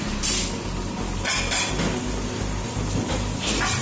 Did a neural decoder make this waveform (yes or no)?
no